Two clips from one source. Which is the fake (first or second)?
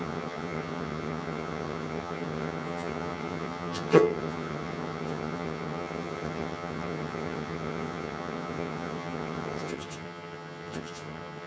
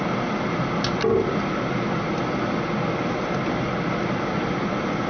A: first